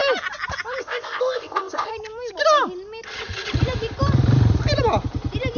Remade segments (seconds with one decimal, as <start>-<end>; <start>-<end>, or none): 0.8-1.9